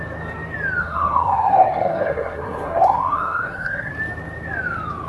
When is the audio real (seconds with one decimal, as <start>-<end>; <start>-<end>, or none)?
0.0-0.8; 3.9-5.1